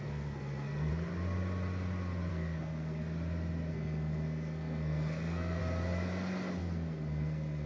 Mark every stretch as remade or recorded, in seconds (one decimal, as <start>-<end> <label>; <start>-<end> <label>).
0.0-0.9 remade; 0.9-2.3 recorded; 2.3-3.0 remade; 3.0-3.7 recorded; 3.7-5.6 remade; 5.6-6.6 recorded; 6.6-7.7 remade